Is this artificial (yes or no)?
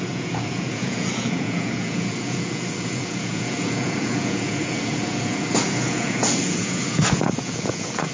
yes